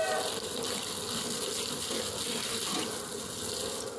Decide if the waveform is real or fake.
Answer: real